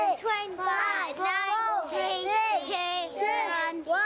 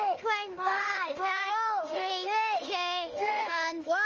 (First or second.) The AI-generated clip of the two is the second